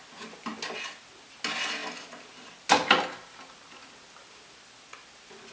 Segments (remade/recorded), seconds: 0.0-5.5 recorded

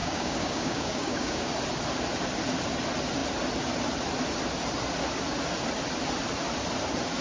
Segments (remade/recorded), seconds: 0.0-1.5 remade; 1.5-7.2 recorded

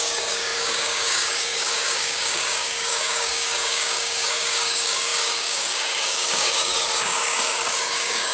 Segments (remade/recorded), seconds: 0.0-8.3 remade

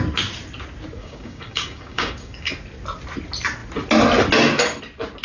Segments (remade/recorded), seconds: 0.0-1.0 recorded; 1.0-2.5 remade; 2.5-5.2 recorded